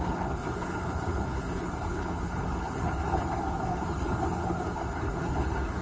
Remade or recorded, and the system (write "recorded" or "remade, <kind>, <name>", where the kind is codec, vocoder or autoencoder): remade, codec, HILCodec